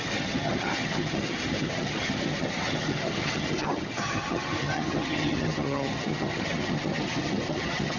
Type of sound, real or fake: fake